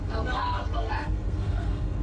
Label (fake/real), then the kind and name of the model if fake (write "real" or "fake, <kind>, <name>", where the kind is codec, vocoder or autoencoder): fake, codec, SNAC